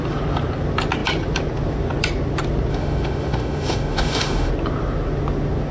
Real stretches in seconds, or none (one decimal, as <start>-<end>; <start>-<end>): 0.0-2.7; 4.5-5.7